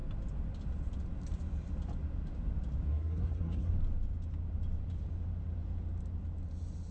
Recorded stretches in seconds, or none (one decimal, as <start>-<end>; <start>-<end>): 0.0-2.9; 3.7-6.9